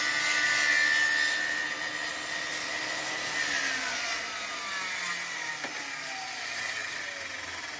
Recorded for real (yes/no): yes